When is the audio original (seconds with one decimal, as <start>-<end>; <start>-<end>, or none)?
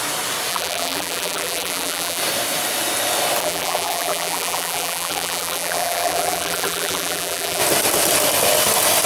0.0-0.5; 2.2-3.4; 7.6-9.1